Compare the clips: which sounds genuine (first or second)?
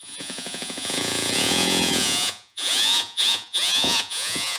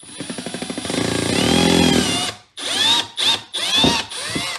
second